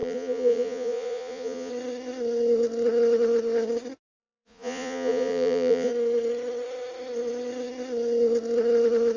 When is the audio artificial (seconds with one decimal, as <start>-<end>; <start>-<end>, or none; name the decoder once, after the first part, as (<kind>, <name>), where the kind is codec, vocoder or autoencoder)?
0.0-1.7 (vocoder, Vocos); 4.2-5.9